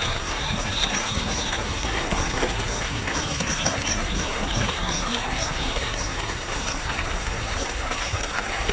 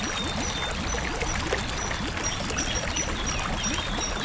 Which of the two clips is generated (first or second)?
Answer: first